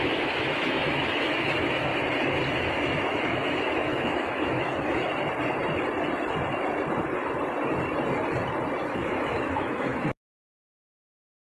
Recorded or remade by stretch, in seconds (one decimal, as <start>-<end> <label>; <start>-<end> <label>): 0.0-1.9 remade; 1.9-2.6 recorded; 2.6-5.1 remade; 5.1-8.9 recorded; 8.9-11.4 remade